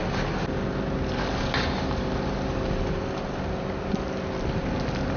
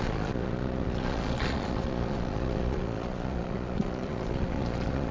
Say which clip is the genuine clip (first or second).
first